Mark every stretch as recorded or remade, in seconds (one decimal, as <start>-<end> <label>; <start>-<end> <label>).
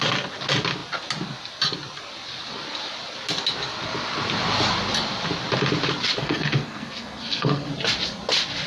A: 0.0-6.2 recorded; 6.2-7.7 remade; 7.7-8.7 recorded